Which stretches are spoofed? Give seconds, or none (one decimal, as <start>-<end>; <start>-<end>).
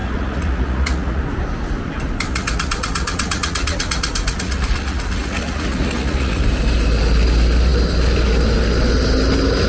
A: 0.0-1.2; 2.3-6.4